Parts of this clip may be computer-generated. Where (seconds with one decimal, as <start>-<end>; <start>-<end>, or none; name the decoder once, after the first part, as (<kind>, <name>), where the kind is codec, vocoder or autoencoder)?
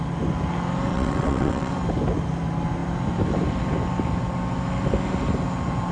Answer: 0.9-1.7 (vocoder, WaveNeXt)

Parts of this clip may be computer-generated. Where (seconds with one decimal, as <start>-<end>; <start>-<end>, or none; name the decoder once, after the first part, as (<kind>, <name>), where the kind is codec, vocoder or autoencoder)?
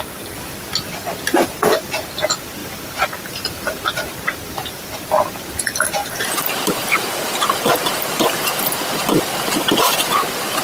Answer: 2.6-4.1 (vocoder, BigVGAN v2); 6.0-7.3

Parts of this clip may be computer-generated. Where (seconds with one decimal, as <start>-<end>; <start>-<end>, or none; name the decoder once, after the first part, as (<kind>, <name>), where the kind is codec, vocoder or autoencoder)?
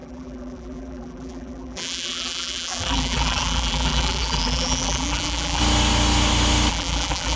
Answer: 0.0-5.6 (vocoder, BigVGAN v2); 6.7-7.4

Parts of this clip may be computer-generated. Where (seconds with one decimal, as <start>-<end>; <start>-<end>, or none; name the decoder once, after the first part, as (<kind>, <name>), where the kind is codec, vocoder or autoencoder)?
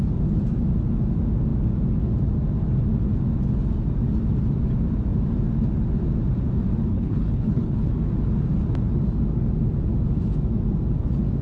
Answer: 6.9-7.9 (codec, HILCodec)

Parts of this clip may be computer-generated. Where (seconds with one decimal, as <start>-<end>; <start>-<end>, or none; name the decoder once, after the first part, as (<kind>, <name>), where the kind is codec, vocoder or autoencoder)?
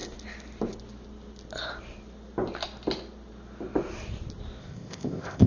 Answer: 4.6-5.5 (codec, ZipCodec)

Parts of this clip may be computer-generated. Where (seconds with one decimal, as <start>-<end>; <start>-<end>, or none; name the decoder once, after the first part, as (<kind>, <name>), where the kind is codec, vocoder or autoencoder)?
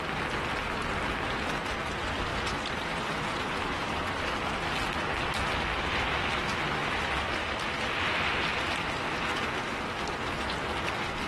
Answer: 2.3-4.1 (vocoder, BigVGAN v2); 6.8-7.6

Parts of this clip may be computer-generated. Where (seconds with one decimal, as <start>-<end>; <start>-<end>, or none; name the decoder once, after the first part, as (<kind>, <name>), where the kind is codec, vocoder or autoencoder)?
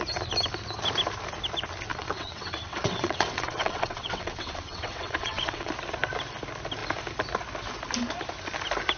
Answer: 1.9-5.7 (vocoder, WaveNeXt)